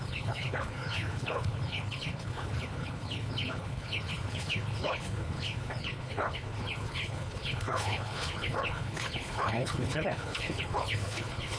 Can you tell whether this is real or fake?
fake